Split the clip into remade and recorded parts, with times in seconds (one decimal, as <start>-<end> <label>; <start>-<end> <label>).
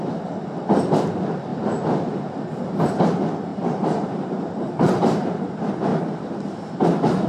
0.0-3.5 recorded; 3.5-5.4 remade; 5.4-5.9 recorded; 5.9-7.3 remade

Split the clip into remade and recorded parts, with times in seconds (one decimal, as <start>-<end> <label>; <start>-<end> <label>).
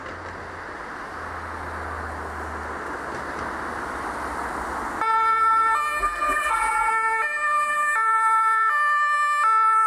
0.0-6.0 recorded; 6.0-6.9 remade; 6.9-9.9 recorded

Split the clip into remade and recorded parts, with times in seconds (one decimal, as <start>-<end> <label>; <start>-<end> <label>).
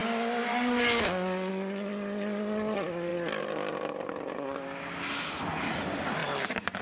0.0-6.2 recorded; 6.2-6.8 remade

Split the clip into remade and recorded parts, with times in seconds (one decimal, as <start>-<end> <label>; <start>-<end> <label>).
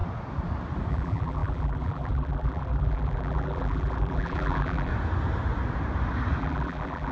0.0-0.9 recorded; 0.9-4.9 remade; 4.9-6.4 recorded; 6.4-7.1 remade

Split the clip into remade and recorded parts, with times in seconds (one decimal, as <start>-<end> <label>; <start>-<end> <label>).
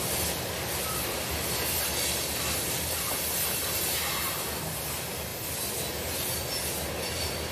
0.0-7.5 recorded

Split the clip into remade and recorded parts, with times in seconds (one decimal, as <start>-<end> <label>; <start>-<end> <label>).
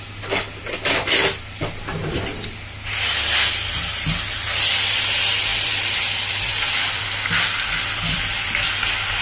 0.0-5.5 recorded; 5.5-8.7 remade; 8.7-9.2 recorded